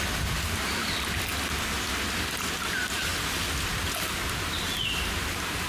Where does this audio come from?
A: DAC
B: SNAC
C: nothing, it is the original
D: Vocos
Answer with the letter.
C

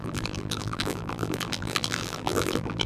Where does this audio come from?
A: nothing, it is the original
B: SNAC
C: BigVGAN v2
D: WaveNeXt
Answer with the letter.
C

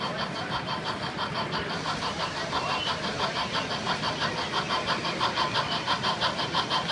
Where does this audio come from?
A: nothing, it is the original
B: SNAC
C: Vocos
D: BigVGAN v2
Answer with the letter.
D